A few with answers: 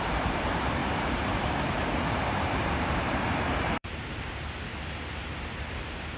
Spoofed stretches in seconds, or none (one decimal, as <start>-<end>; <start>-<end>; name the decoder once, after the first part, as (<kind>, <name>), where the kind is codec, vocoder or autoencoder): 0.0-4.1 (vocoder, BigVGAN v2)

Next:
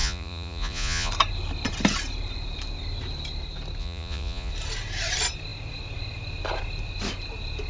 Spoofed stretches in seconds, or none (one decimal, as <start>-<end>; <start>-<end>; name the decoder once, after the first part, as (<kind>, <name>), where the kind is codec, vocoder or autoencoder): 0.0-1.1 (vocoder, Vocos); 3.8-4.5

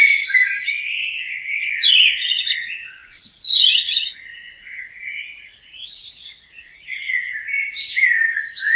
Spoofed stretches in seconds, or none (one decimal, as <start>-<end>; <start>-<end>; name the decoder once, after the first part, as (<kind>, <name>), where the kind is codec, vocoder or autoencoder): 0.0-7.2 (vocoder, Vocos)

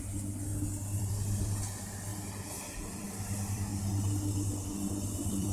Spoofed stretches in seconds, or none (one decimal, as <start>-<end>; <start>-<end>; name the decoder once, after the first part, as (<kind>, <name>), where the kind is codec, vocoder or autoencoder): 0.0-0.5 (vocoder, BigVGAN v2); 1.0-2.1; 2.8-3.7; 4.9-5.5

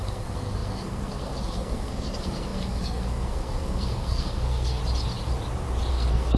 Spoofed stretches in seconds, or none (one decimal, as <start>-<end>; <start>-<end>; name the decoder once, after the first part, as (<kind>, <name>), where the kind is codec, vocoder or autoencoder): 0.0-4.8 (codec, SNAC); 5.9-6.4

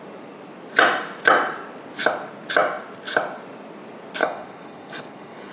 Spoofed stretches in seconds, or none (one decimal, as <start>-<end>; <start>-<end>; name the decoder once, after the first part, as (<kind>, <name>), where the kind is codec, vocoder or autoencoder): 4.2-5.5 (codec, DAC)

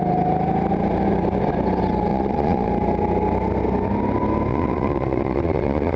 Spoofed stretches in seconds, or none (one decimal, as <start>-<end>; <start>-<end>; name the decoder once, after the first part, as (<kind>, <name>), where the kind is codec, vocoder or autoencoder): 2.1-2.7 (vocoder, Vocos); 4.5-6.0

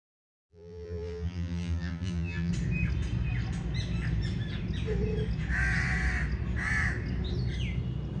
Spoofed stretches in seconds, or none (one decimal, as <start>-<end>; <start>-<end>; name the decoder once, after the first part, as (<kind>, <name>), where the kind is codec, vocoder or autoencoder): 0.5-2.5 (vocoder, BigVGAN v2)